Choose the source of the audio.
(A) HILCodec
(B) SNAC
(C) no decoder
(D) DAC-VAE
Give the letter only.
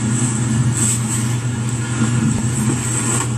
C